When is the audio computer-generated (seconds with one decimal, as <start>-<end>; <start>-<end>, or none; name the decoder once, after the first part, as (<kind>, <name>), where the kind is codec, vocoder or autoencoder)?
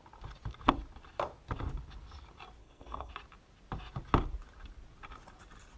2.6-3.1 (codec, SNAC)